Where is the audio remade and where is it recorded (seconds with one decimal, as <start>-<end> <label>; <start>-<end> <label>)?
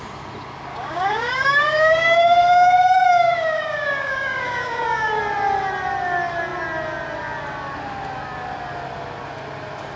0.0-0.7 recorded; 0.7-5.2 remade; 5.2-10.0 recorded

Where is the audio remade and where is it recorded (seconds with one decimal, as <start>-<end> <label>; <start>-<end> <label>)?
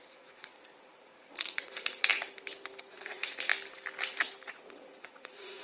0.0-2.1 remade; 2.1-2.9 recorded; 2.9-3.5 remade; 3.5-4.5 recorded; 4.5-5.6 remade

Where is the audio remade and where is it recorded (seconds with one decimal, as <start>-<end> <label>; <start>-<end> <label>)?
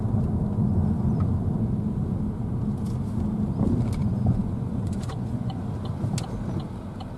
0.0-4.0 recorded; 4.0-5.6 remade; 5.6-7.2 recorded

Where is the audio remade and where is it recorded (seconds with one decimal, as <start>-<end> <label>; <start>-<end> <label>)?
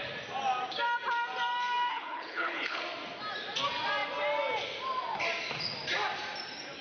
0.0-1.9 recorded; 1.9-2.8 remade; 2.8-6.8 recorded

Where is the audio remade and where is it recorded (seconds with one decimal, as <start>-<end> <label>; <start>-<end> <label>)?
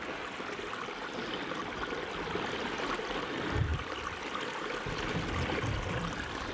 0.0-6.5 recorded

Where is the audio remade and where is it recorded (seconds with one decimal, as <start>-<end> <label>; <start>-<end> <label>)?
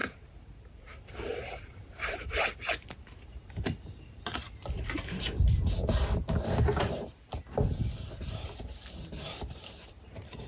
0.0-4.4 remade; 4.4-6.8 recorded; 6.8-10.5 remade